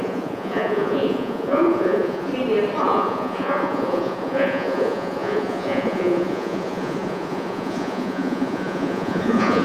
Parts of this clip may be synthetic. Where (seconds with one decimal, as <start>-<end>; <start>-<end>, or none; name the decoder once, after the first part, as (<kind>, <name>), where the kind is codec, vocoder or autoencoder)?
0.0-2.3 (vocoder, Vocos); 2.8-9.6